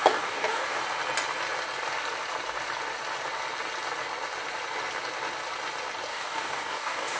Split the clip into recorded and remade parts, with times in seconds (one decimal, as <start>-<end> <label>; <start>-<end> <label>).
0.0-0.8 remade; 0.8-6.1 recorded; 6.1-7.2 remade